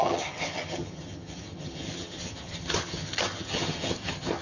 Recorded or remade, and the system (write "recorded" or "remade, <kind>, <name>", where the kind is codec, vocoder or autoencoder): remade, vocoder, HiFi-GAN